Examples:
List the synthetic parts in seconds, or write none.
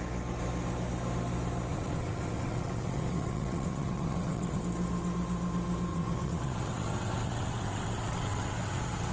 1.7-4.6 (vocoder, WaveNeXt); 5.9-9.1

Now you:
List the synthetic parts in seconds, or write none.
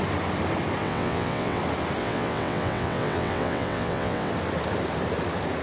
0.8-1.6 (vocoder, WaveNeXt); 2.0-4.3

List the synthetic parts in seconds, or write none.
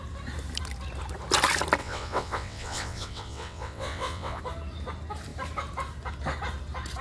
1.8-4.4 (vocoder, WaveNeXt)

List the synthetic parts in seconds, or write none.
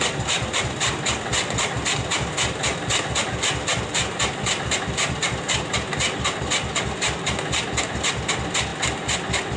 none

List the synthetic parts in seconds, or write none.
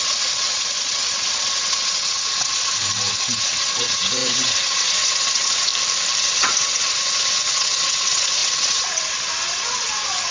0.0-5.7 (vocoder, WaveNeXt); 6.2-10.3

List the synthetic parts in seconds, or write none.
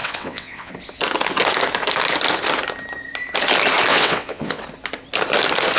0.0-0.7 (vocoder, WaveNeXt); 3.9-4.6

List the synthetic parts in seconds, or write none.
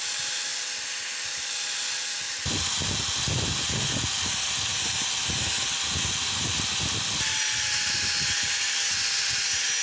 none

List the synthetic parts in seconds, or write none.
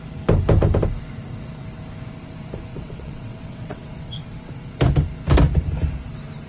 2.7-4.5 (vocoder, WaveNeXt)